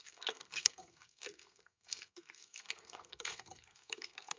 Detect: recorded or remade remade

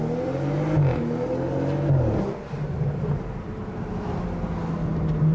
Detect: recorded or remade recorded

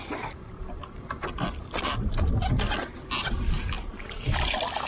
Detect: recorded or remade recorded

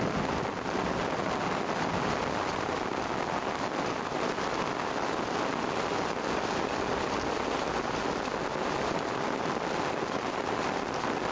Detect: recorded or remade recorded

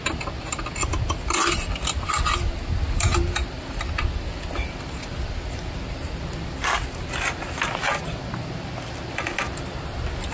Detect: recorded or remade recorded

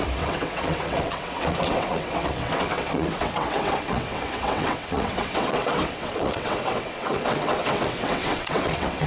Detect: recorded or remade remade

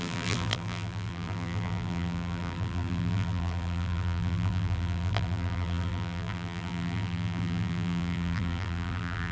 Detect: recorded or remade remade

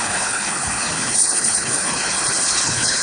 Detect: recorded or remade remade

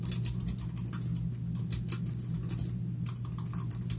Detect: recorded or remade recorded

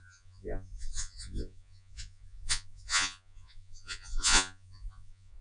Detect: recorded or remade remade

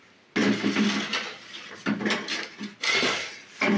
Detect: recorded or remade recorded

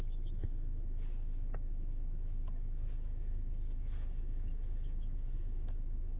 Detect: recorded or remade remade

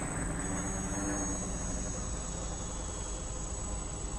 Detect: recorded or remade recorded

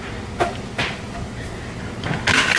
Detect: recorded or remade recorded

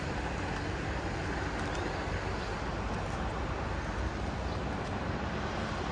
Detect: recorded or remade recorded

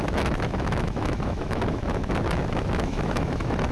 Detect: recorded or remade remade